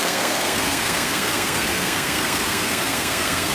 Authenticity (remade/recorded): remade